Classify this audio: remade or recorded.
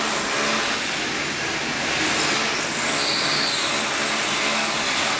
recorded